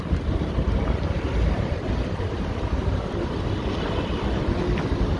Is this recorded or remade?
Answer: recorded